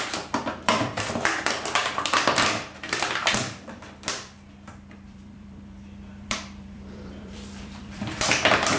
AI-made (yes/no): yes